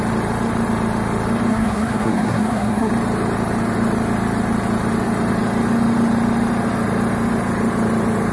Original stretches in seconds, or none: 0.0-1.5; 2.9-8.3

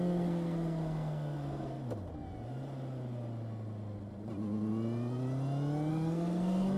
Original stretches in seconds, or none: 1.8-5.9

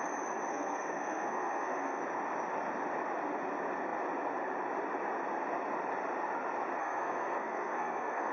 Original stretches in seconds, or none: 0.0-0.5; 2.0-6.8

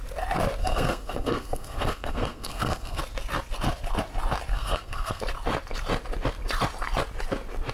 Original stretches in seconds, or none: 0.0-0.6; 3.0-4.5; 5.2-7.7